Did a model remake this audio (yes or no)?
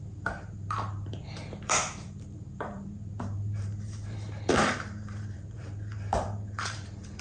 yes